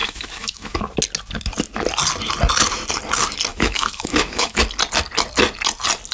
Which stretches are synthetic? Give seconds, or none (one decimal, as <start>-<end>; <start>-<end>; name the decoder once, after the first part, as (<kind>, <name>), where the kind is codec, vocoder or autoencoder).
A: 0.0-0.8 (autoencoder, DAC-VAE); 3.5-4.6